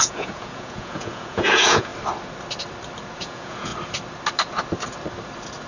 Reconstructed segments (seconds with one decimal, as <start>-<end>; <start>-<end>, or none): 0.0-1.9; 3.2-3.7